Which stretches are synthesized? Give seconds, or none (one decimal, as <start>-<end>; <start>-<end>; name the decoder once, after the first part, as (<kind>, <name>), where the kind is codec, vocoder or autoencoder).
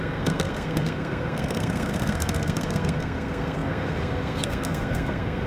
0.0-5.5 (codec, SNAC)